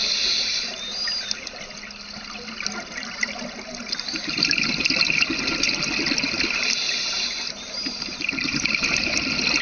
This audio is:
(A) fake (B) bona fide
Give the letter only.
B